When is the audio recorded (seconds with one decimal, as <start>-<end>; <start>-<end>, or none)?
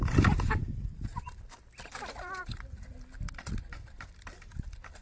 2.4-3.2